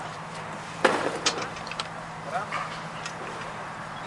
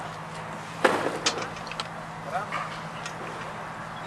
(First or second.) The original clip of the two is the second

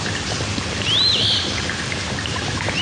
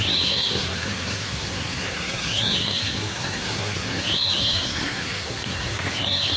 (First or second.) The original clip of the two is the first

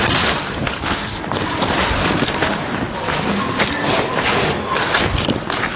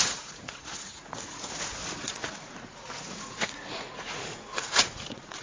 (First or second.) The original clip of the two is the first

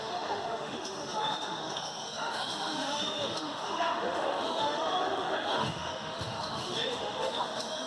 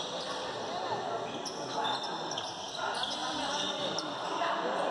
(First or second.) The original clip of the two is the second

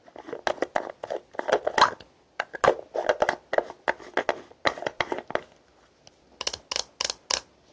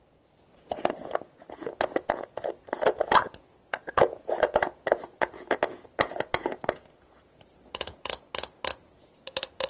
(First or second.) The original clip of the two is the first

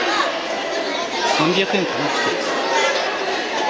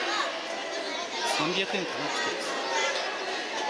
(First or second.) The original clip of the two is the second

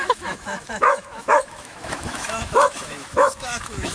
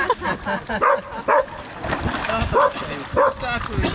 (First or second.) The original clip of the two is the second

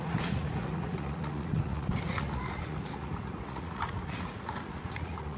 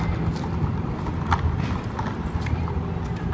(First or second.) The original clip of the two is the second